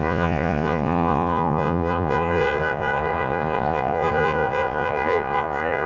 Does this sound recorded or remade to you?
remade